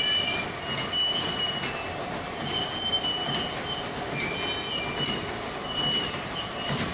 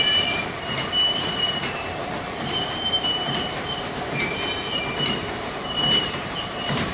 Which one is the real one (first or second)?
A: first